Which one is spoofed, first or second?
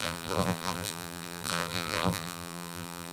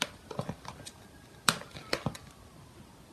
first